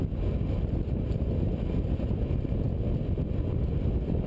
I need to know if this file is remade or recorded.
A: recorded